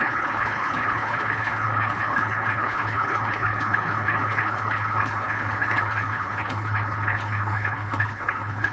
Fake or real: fake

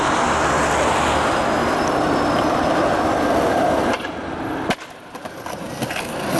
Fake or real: real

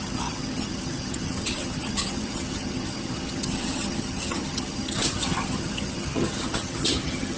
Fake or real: fake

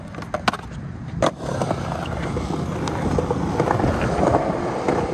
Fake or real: real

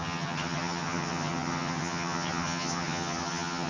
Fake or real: fake